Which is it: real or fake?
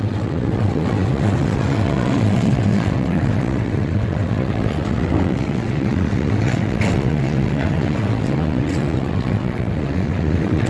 fake